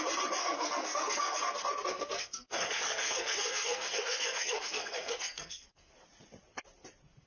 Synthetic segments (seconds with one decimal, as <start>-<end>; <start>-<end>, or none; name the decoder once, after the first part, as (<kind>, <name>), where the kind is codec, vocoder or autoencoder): 0.4-1.4 (codec, SNAC); 1.9-5.9